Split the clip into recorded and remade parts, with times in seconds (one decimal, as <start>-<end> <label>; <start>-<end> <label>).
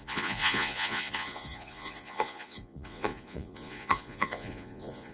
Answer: 0.0-5.1 remade